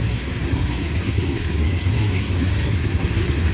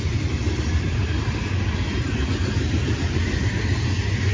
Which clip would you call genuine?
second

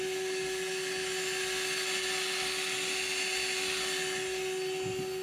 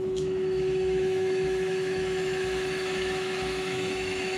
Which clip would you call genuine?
first